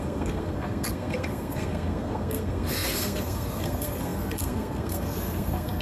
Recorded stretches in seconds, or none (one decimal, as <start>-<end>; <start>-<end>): none